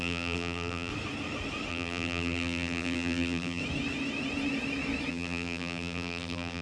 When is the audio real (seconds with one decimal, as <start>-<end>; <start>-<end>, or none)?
0.9-1.7; 3.6-5.1